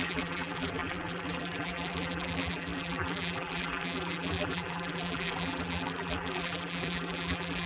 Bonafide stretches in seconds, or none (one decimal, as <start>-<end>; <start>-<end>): none